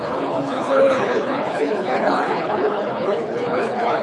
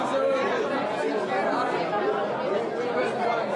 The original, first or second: second